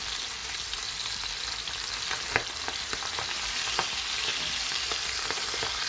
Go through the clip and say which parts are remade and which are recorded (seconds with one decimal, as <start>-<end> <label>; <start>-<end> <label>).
0.0-0.4 recorded; 0.4-1.5 remade; 1.5-4.3 recorded; 4.3-5.9 remade